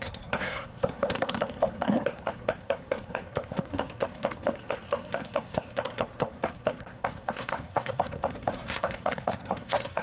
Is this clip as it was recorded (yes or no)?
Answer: no